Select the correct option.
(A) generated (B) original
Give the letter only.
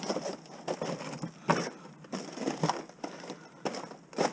B